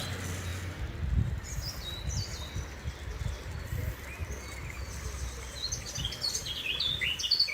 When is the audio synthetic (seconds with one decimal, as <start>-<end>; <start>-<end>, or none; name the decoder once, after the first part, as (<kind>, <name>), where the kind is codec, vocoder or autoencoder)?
none